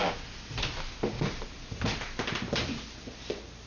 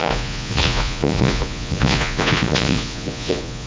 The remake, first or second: second